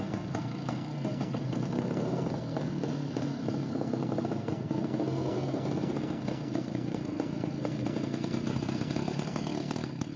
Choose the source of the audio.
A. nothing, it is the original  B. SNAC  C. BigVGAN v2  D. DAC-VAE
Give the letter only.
B